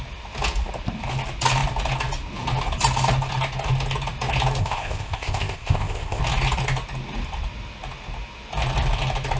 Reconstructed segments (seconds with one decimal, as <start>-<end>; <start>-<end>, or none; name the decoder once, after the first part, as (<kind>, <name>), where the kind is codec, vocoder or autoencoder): 4.6-6.2 (codec, ZipCodec)